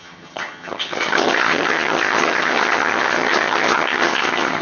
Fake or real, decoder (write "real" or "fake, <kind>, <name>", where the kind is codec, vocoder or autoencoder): fake, vocoder, HiFi-GAN